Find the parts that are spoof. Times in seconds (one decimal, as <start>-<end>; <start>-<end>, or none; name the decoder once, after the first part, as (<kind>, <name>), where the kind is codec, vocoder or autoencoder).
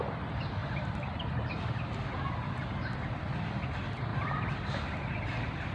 0.6-1.8 (vocoder, BigVGAN v2); 4.1-5.7